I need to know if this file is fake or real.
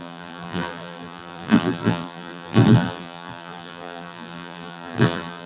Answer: fake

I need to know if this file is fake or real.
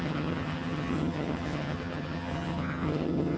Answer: fake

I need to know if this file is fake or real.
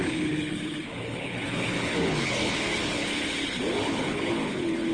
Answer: fake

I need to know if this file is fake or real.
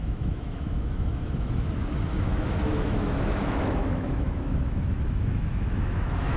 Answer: fake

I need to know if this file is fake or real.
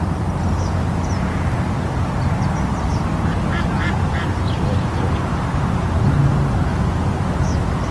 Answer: real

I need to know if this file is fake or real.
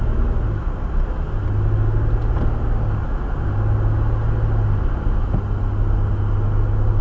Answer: real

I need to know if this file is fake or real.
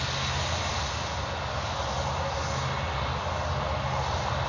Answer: real